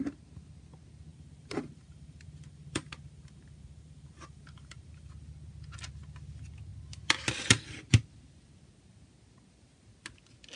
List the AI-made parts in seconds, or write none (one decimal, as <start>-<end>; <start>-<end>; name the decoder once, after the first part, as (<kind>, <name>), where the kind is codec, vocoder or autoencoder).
1.1-5.1 (vocoder, BigVGAN v2)